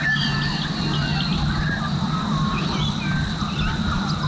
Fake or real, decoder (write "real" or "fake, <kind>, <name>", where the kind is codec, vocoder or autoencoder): real